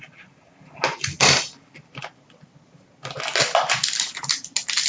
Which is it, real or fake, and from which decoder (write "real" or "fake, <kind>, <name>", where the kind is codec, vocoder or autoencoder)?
real